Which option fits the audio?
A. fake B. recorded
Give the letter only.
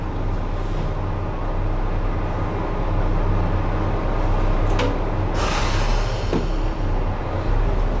B